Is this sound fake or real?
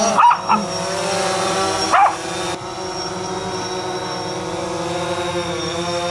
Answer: real